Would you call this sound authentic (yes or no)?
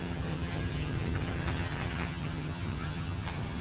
no